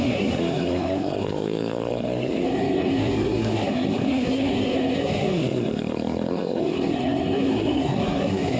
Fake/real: fake